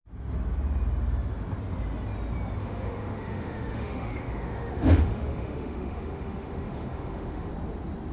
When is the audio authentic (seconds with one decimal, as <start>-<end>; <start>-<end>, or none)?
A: 0.0-2.6; 7.5-8.1